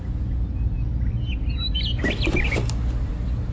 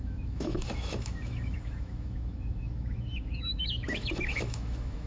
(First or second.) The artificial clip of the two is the second